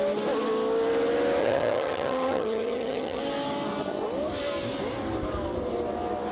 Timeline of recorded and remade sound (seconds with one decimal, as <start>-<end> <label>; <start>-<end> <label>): 0.0-1.4 recorded; 1.4-3.2 remade; 3.2-6.3 recorded